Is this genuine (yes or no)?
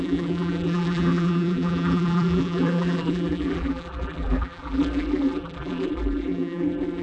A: no